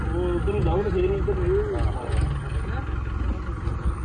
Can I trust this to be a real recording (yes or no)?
yes